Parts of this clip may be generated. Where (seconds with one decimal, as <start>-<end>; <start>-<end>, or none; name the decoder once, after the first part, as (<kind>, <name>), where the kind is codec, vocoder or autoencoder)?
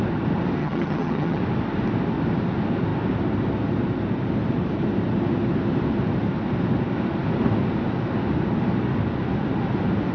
0.6-1.4 (vocoder, HiFi-GAN)